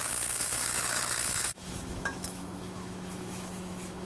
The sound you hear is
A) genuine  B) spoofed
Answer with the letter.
B